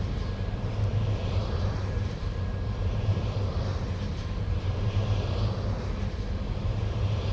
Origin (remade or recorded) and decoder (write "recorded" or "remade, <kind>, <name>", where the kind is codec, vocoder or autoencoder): remade, vocoder, BigVGAN v2